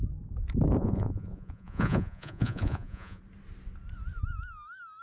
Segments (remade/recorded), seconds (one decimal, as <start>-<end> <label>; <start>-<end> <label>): 0.0-0.8 recorded; 0.8-3.2 remade; 3.2-5.0 recorded